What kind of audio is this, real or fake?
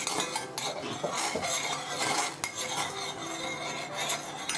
real